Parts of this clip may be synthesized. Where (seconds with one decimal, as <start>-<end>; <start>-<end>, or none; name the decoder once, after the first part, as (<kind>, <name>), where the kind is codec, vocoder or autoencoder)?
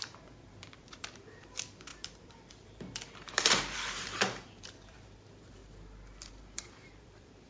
0.0-5.6 (vocoder, BigVGAN v2); 6.3-7.5